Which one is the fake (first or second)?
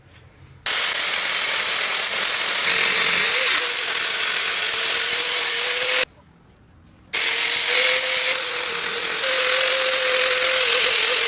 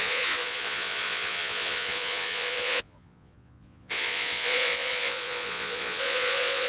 second